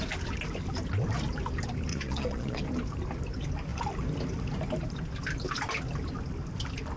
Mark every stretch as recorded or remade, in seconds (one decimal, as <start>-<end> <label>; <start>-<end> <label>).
0.0-1.9 recorded; 1.9-2.6 remade; 2.6-7.0 recorded